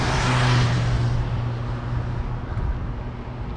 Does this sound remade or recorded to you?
recorded